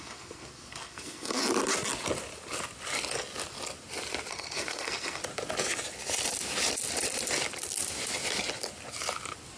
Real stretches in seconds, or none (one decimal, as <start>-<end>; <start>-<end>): 1.4-4.3; 5.2-9.6